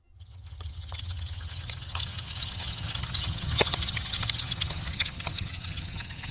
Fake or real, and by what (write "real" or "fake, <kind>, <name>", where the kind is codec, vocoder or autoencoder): fake, vocoder, HiFi-GAN